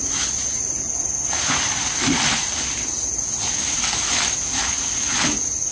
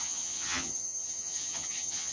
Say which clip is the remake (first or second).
second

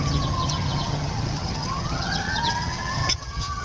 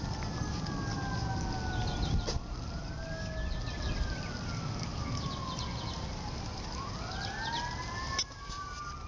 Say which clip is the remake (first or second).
first